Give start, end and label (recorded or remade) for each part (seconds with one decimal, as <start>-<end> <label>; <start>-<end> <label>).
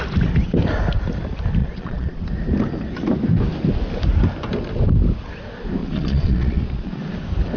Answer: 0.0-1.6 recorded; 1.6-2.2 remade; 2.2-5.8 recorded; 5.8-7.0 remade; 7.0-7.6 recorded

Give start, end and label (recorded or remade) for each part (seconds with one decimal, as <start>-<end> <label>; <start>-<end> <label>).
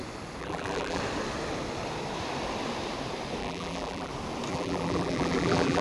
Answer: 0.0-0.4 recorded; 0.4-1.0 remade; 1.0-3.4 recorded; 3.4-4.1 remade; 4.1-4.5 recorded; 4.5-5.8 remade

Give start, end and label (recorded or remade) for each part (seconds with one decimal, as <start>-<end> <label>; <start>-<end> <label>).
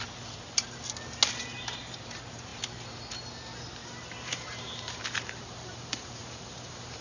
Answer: 0.0-3.8 recorded; 3.8-7.0 remade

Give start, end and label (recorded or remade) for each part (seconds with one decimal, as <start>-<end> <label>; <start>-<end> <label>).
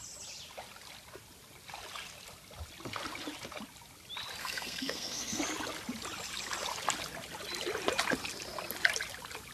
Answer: 0.0-4.4 recorded; 4.4-5.4 remade; 5.4-9.5 recorded